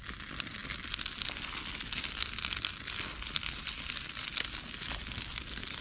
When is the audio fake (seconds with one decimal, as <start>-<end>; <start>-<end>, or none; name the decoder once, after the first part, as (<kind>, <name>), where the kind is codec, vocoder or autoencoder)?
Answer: none

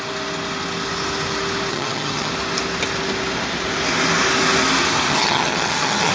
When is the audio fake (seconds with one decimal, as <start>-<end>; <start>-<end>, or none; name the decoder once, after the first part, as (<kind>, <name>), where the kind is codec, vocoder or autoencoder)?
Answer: 1.7-2.3 (vocoder, HiFi-GAN); 5.1-6.1